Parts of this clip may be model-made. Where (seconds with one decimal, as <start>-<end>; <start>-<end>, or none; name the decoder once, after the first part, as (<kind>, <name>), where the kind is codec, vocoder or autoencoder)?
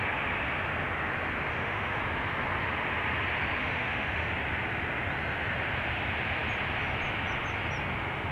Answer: 1.5-2.0 (autoencoder, DAC-VAE); 3.6-4.3